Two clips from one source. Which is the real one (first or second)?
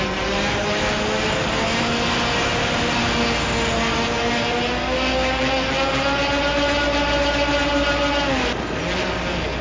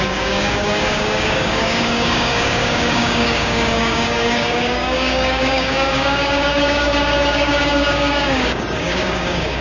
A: first